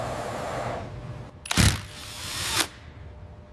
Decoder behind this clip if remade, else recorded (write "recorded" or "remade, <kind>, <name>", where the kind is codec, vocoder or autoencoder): recorded